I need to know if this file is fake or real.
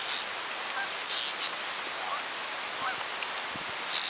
real